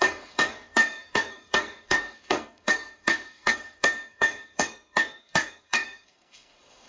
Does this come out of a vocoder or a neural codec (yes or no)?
yes